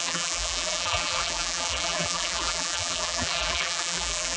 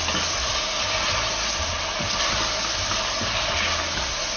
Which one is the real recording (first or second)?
second